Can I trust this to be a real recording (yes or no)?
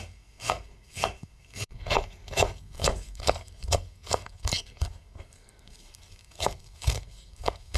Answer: no